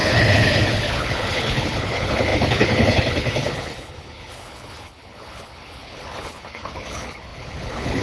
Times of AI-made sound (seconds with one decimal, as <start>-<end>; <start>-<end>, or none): 0.0-8.0